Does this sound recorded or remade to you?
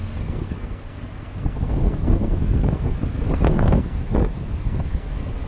remade